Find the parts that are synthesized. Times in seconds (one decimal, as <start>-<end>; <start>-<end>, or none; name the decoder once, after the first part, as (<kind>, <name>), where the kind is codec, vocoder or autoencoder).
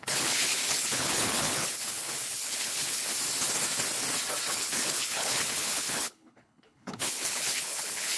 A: 0.0-3.1 (codec, HILCodec); 4.5-8.2